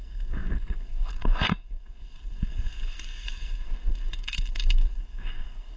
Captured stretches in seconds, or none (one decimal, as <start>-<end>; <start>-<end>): none